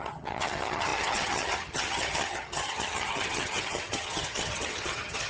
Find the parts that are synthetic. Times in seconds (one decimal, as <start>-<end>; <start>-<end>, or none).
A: 0.0-5.3